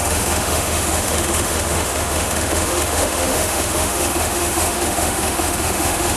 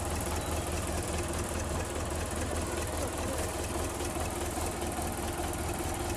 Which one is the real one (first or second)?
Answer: second